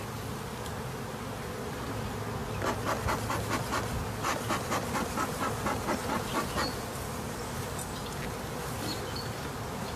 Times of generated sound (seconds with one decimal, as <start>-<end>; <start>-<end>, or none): none